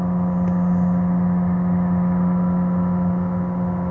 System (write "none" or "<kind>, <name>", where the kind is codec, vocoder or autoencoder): none